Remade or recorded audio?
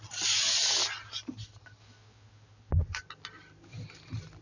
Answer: recorded